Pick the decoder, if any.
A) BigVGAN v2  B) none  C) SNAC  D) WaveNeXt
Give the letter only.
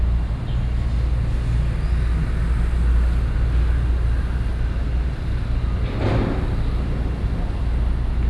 B